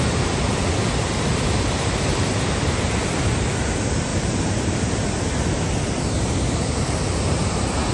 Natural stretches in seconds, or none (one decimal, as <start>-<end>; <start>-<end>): 0.0-1.3; 2.6-4.1; 5.1-7.9